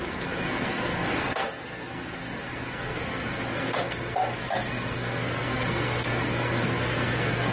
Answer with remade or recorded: remade